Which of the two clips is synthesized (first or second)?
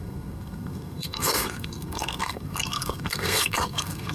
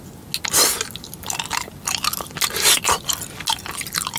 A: first